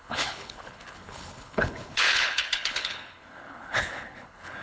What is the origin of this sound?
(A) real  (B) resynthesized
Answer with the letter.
B